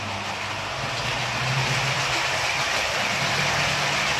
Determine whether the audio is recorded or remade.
recorded